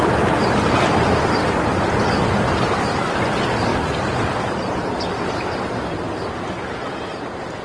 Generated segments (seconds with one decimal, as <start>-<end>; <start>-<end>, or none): none